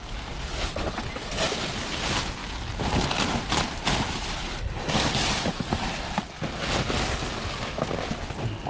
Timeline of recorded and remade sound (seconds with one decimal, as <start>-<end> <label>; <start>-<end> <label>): 0.0-8.7 recorded

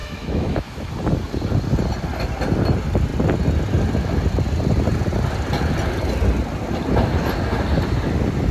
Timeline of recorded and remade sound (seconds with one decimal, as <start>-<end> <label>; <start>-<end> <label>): 0.0-0.9 remade; 0.9-8.5 recorded

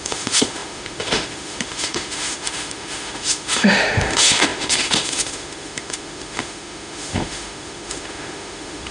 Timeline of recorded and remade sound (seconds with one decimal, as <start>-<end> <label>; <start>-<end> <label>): 0.0-8.9 remade